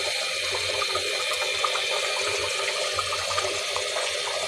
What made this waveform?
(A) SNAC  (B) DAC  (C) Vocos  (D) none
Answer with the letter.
C